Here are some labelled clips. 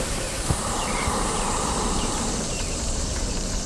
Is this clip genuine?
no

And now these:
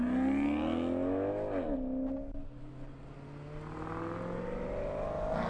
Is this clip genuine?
yes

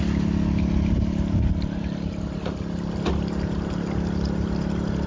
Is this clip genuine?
yes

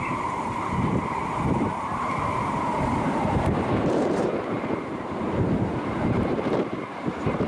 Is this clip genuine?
no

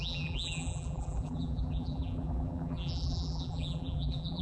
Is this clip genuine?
no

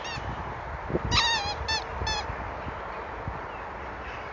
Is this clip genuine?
yes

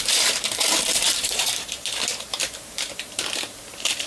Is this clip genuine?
no